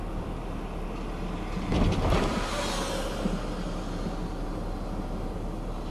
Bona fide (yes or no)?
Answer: yes